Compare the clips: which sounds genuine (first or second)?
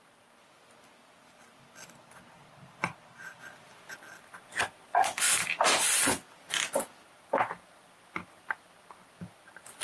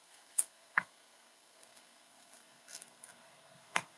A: first